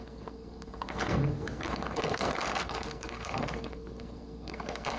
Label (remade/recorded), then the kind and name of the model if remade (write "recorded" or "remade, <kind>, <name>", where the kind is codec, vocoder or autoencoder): remade, codec, SNAC